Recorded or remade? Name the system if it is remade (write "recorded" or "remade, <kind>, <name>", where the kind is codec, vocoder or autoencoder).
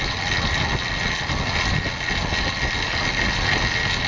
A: recorded